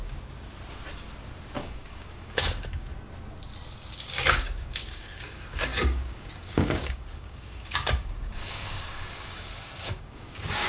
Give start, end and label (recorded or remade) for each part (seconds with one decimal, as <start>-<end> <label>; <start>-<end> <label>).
0.0-1.6 recorded; 1.6-2.9 remade; 2.9-3.7 recorded; 3.7-10.7 remade